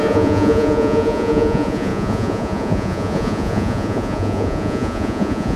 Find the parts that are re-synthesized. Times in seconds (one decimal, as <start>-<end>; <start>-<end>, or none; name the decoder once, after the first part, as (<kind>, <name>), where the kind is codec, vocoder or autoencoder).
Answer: 0.0-5.6 (vocoder, Vocos)